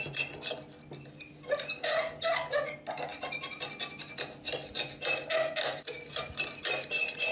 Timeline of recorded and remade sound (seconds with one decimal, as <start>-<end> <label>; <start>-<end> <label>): 0.0-7.3 recorded